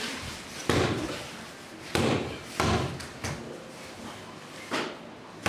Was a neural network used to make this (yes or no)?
no